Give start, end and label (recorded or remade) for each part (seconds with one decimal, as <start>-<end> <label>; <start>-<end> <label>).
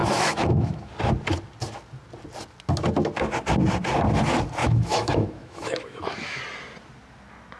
0.0-0.9 remade; 0.9-4.6 recorded; 4.6-6.4 remade; 6.4-7.6 recorded